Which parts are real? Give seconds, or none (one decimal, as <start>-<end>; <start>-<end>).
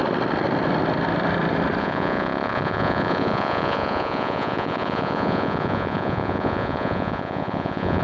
0.0-1.8